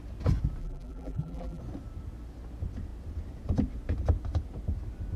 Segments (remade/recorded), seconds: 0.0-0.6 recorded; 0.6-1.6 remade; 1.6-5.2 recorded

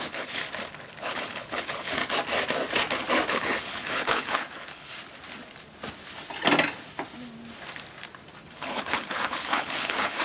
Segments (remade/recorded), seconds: 0.0-0.4 remade; 0.4-1.0 recorded; 1.0-2.0 remade; 2.0-3.3 recorded; 3.3-4.9 remade; 4.9-8.4 recorded; 8.4-10.2 remade

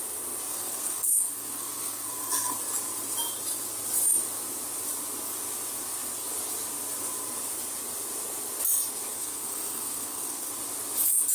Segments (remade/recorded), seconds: 0.0-0.5 recorded; 0.5-2.6 remade; 2.6-9.1 recorded; 9.1-10.5 remade; 10.5-11.3 recorded

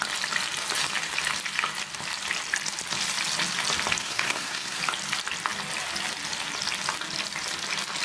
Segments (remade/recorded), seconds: 0.0-4.0 recorded; 4.0-4.8 remade; 4.8-8.0 recorded

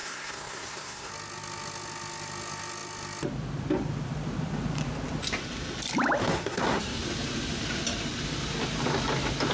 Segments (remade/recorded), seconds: 0.0-1.1 remade; 1.1-6.2 recorded; 6.2-7.0 remade; 7.0-9.5 recorded

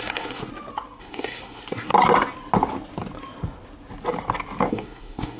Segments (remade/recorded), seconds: 0.0-0.5 remade; 0.5-1.0 recorded; 1.0-1.9 remade; 1.9-4.7 recorded; 4.7-5.4 remade

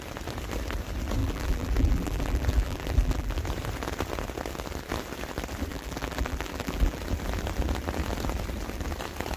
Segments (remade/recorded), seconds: 0.0-1.2 recorded; 1.2-3.4 remade; 3.4-5.7 recorded; 5.7-7.0 remade; 7.0-9.4 recorded

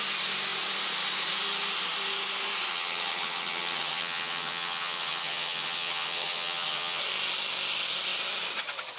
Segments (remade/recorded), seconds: 0.0-2.7 recorded; 2.7-7.0 remade; 7.0-9.0 recorded